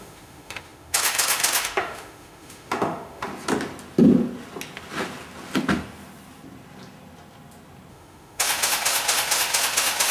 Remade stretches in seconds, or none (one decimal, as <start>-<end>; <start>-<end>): 0.0-3.3; 7.9-10.1